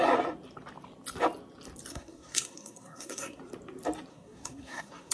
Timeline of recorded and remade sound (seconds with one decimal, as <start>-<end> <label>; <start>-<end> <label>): 0.0-1.9 recorded; 1.9-3.4 remade; 3.4-4.1 recorded; 4.1-5.1 remade